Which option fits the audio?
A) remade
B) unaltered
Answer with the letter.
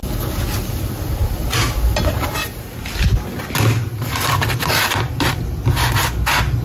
B